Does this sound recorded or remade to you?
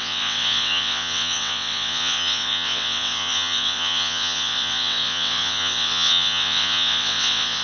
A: remade